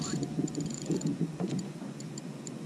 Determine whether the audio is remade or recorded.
remade